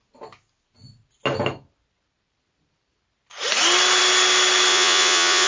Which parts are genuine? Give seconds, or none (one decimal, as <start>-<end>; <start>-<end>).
0.0-4.7